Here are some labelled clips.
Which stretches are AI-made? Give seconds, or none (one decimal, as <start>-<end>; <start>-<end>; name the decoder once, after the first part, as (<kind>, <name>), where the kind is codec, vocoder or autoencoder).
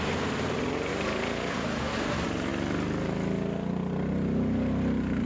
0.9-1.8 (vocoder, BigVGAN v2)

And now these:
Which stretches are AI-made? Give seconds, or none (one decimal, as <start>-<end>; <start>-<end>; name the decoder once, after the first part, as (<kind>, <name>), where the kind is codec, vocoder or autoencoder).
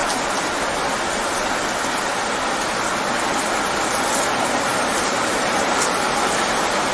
4.7-6.3 (vocoder, BigVGAN v2)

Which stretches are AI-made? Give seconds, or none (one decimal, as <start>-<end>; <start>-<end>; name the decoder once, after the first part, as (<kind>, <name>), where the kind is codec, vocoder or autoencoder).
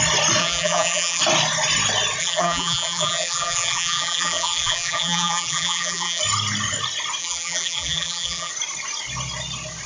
0.4-1.2 (vocoder, BigVGAN v2); 2.2-6.2; 7.2-8.5